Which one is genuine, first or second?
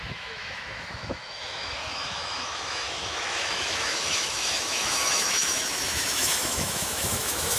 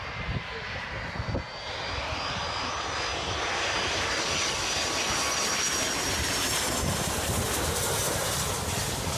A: second